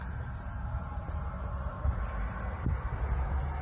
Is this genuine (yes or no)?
yes